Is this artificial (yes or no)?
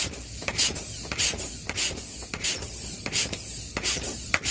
no